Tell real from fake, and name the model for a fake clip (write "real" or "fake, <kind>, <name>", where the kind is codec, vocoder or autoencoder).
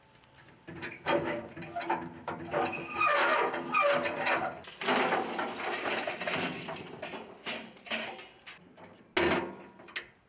real